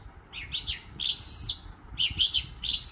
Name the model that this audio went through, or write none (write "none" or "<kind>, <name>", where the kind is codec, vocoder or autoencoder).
none